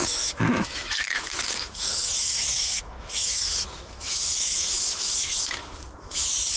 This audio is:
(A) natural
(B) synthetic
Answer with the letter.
B